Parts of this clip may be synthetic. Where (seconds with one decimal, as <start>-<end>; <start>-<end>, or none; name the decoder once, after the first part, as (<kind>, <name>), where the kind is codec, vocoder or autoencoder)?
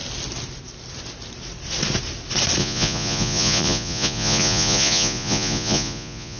2.6-6.4 (vocoder, Vocos)